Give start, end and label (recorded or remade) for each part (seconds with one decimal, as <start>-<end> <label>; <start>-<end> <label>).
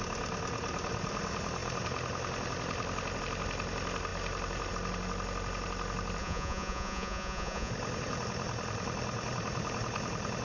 0.0-6.2 recorded; 6.2-7.7 remade; 7.7-10.4 recorded